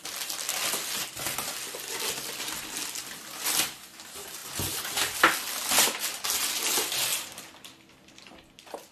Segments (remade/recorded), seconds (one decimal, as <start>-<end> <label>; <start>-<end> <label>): 0.0-8.9 recorded